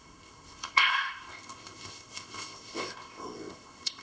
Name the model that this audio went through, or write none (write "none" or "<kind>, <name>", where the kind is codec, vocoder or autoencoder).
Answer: codec, ZipCodec